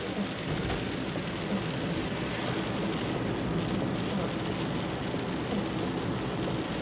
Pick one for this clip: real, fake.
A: real